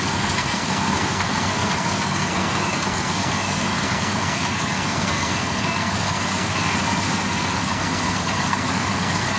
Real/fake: fake